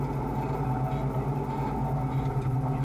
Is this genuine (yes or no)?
yes